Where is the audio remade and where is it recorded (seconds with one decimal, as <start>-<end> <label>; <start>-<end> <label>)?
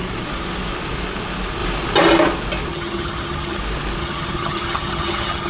0.0-2.7 recorded; 2.7-3.6 remade; 3.6-4.0 recorded; 4.0-5.5 remade